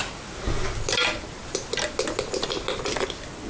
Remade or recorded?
recorded